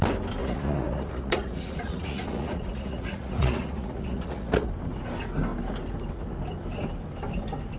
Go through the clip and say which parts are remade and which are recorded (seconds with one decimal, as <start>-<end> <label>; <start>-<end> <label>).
0.0-0.4 recorded; 0.4-4.7 remade; 4.7-7.8 recorded